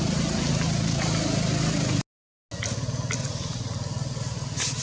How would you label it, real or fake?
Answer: real